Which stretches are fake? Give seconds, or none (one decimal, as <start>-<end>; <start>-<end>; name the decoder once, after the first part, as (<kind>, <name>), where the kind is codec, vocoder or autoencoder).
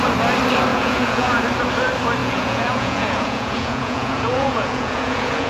0.7-1.4 (vocoder, Vocos); 2.2-5.5